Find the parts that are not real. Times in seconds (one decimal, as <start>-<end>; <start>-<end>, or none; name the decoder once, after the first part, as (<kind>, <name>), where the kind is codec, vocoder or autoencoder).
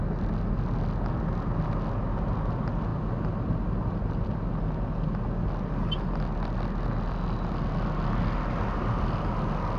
none